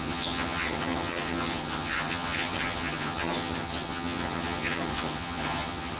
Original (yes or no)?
no